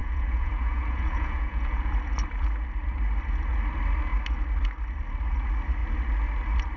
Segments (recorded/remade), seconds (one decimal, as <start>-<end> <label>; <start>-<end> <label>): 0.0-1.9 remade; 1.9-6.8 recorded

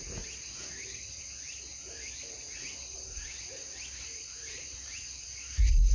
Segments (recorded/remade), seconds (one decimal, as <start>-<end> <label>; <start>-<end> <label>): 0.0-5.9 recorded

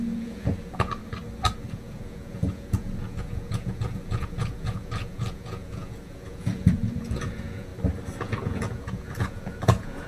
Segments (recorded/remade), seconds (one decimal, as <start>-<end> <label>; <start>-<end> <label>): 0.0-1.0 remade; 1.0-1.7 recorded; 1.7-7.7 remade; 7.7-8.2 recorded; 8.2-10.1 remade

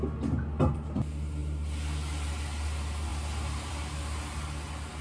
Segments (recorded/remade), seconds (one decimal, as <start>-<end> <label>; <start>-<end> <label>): 0.0-5.0 recorded

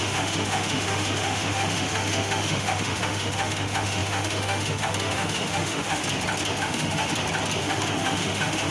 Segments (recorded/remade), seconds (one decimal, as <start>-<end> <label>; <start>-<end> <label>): 0.0-6.0 remade; 6.0-6.6 recorded; 6.6-7.1 remade; 7.1-7.6 recorded; 7.6-8.7 remade

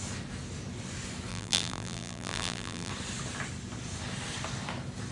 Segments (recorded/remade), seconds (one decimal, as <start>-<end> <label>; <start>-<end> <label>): 0.0-1.3 recorded; 1.3-2.9 remade; 2.9-5.1 recorded